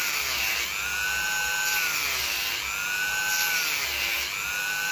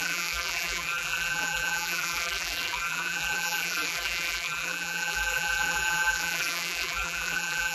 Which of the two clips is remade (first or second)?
second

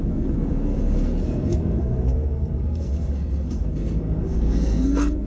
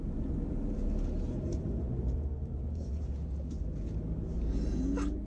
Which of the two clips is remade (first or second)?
first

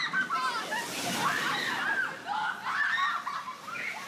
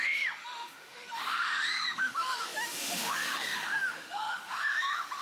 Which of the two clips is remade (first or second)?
second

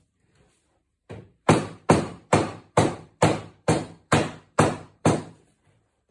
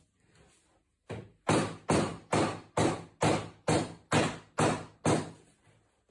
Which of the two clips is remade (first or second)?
first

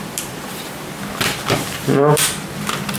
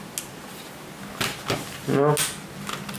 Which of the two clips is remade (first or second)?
first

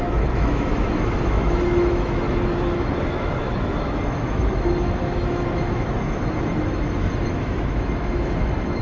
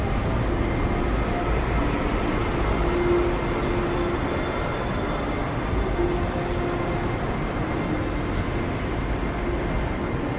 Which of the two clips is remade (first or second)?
first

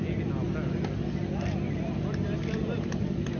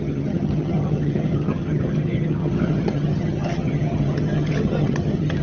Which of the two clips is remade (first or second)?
second